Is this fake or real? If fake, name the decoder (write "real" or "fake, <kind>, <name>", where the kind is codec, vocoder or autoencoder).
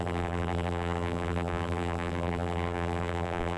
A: fake, vocoder, BigVGAN v2